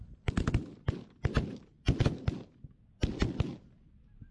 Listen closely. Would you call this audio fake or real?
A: real